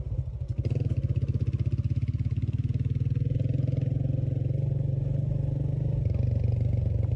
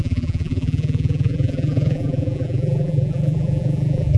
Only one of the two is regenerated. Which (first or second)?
second